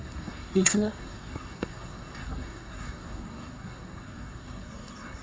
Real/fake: fake